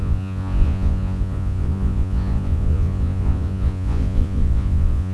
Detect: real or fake fake